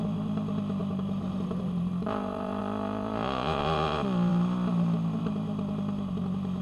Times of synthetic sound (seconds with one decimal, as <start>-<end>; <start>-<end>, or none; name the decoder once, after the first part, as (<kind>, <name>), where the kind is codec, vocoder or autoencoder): 0.8-2.6 (vocoder, BigVGAN v2)